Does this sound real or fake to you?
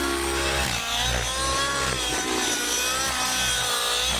real